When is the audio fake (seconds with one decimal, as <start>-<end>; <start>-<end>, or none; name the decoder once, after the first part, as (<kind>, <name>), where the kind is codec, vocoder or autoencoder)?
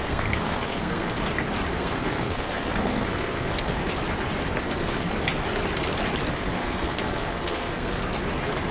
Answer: 0.0-1.2 (codec, SNAC); 1.8-3.8; 4.6-5.1; 6.3-8.0